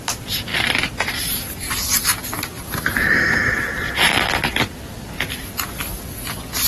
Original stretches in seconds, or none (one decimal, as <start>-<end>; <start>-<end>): 0.5-3.7